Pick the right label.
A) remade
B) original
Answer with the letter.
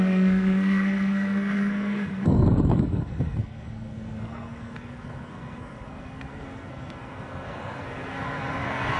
A